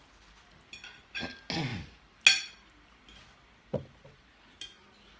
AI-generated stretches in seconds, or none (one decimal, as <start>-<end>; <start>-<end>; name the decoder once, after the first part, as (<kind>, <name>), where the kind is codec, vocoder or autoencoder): none